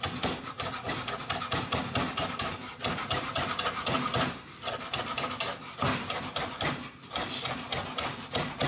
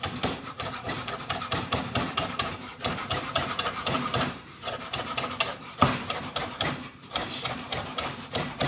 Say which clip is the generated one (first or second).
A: second